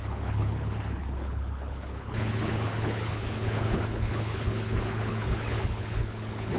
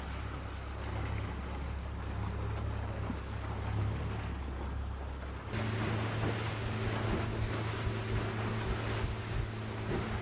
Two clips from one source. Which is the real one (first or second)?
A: second